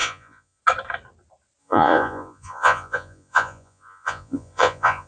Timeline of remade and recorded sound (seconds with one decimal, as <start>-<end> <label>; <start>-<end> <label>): 0.0-0.6 remade; 0.6-1.6 recorded; 1.6-5.1 remade